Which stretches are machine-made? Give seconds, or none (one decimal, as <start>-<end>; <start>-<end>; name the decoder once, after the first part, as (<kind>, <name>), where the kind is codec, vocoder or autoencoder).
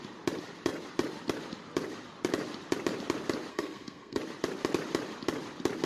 3.5-4.2 (codec, SNAC)